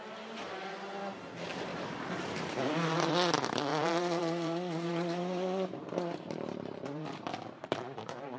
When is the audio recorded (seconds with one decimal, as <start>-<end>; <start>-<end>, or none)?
0.7-1.7; 3.1-3.7